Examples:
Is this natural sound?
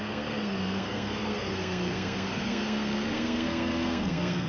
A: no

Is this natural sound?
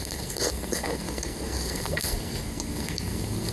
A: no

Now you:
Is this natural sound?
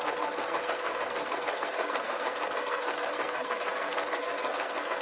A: no